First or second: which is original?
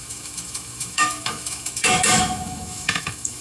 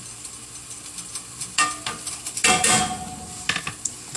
second